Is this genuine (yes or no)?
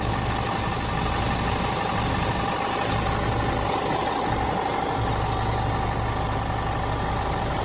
yes